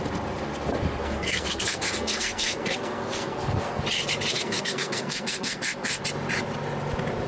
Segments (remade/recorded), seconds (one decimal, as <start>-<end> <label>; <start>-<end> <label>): 0.0-1.0 recorded; 1.0-3.8 remade; 3.8-4.3 recorded; 4.3-6.0 remade; 6.0-7.3 recorded